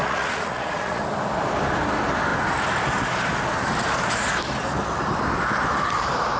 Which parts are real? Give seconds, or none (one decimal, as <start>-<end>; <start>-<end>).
1.0-6.4